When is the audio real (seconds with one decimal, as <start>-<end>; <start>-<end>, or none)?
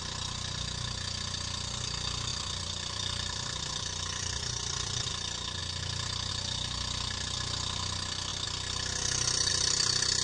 0.0-2.3; 5.1-10.2